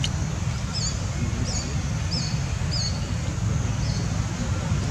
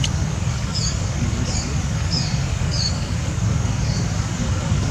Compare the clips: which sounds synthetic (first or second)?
second